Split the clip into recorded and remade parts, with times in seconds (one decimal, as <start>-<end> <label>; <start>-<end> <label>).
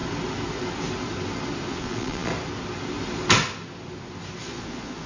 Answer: 0.0-1.7 recorded; 1.7-2.3 remade; 2.3-4.4 recorded; 4.4-5.1 remade